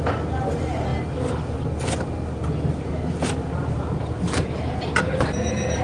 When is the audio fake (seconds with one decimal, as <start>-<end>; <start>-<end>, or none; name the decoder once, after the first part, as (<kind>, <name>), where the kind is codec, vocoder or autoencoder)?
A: 3.4-5.8 (vocoder, BigVGAN v2)